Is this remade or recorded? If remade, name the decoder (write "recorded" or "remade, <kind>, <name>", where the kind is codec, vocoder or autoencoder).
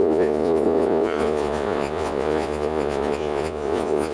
remade, vocoder, Vocos